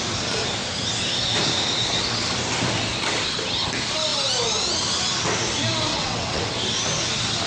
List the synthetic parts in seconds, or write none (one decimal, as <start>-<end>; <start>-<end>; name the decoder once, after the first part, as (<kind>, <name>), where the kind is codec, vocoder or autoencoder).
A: 5.9-6.4 (vocoder, WaveNeXt)